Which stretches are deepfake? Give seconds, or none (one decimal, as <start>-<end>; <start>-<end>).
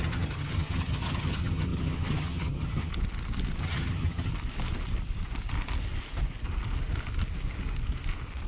0.0-2.9; 3.6-4.3